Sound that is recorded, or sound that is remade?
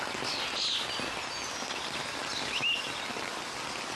recorded